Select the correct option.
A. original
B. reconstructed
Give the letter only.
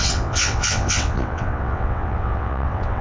B